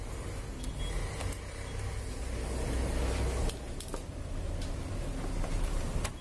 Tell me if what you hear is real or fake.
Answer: real